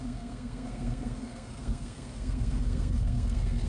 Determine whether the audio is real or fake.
fake